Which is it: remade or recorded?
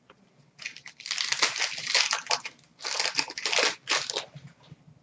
recorded